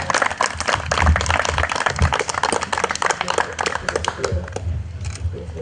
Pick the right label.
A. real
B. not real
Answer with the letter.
A